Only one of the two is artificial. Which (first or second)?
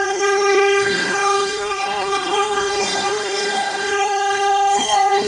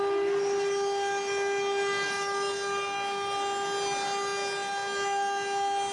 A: first